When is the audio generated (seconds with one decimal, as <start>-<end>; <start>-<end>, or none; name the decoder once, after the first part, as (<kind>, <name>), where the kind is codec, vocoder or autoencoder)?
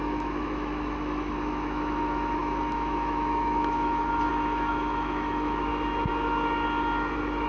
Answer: 0.0-5.7 (autoencoder, DAC-VAE)